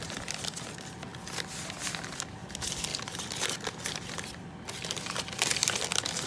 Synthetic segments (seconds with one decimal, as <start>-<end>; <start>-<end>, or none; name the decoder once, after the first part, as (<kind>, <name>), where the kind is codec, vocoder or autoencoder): none